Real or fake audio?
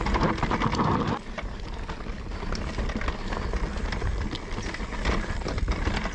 real